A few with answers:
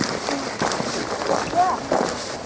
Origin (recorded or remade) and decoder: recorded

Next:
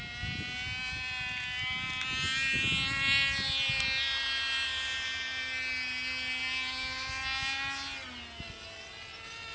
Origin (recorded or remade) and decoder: recorded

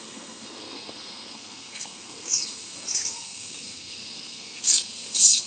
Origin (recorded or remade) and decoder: remade, codec, SNAC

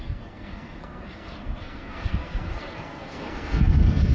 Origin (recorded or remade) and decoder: remade, codec, SNAC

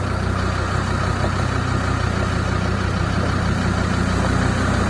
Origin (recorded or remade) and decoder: recorded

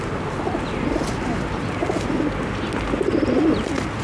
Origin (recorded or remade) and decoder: recorded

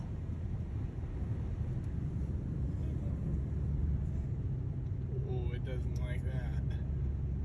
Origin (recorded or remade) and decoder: recorded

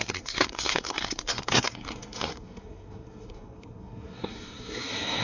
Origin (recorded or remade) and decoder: remade, codec, SNAC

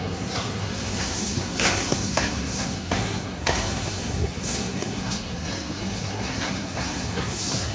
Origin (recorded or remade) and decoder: remade, codec, SNAC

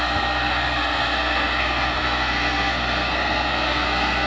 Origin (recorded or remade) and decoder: remade, codec, SNAC